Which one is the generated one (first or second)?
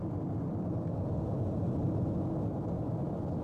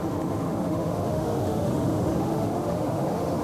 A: second